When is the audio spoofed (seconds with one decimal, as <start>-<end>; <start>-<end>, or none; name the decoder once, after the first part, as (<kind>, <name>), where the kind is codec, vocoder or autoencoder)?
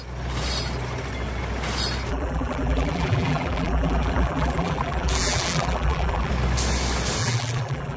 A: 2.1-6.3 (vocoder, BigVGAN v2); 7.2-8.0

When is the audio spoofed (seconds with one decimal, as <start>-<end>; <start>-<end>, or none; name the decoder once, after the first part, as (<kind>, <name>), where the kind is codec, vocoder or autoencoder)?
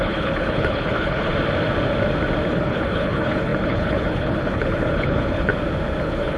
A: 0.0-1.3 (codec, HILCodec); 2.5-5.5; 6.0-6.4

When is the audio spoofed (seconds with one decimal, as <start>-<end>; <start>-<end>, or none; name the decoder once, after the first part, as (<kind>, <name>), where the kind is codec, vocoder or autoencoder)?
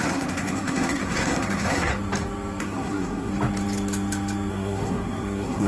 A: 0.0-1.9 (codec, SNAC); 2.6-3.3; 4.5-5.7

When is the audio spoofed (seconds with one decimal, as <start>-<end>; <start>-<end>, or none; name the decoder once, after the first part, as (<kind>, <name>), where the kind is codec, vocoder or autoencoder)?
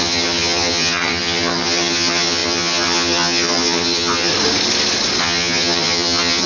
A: 0.0-4.3 (vocoder, HiFi-GAN); 5.2-6.5